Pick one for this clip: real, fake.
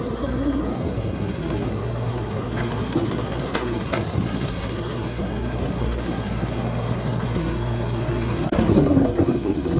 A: fake